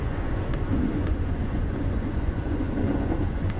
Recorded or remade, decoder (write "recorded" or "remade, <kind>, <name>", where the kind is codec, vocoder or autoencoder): remade, vocoder, Vocos